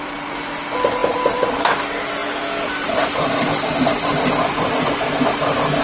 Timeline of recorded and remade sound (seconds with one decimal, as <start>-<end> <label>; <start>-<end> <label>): 0.0-2.2 recorded; 2.2-3.7 remade; 3.7-5.8 recorded